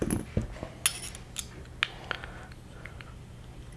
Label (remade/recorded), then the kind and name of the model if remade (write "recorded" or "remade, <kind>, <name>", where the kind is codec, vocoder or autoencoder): recorded